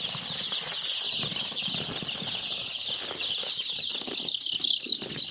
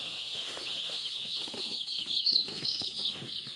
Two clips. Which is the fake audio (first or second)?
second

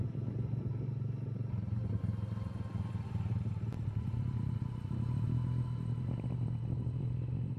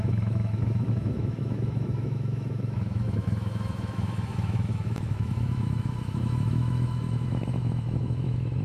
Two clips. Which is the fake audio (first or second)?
second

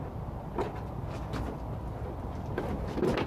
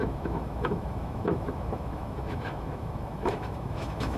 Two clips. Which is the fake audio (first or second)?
second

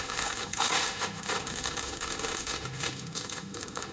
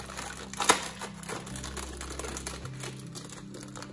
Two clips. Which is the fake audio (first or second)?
first